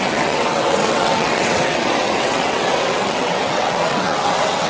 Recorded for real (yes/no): no